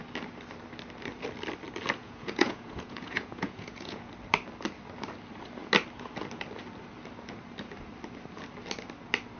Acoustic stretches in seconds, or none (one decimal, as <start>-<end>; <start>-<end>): 0.0-2.0; 4.1-9.4

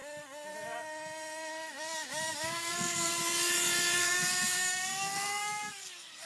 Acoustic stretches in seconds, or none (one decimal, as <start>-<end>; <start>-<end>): 0.0-2.3; 3.2-4.0

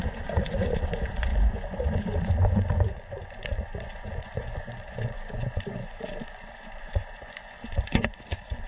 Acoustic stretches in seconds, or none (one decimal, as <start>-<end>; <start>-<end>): none

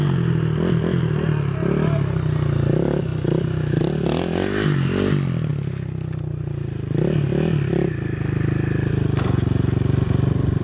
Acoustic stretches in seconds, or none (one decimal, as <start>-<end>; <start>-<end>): 0.0-10.6

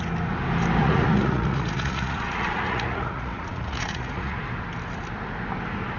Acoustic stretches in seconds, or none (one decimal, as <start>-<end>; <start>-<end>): 0.0-0.8; 4.4-6.0

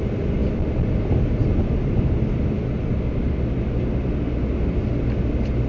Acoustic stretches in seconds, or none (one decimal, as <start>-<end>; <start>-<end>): 0.0-5.7

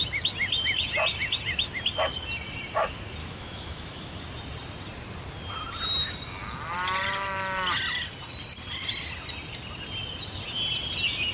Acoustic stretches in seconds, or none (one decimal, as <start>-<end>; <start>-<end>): 0.0-3.2; 4.2-11.3

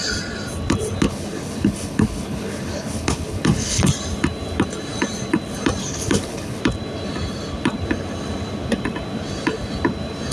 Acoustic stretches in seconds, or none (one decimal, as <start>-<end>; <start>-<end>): 0.0-1.1; 3.8-5.8; 6.6-10.3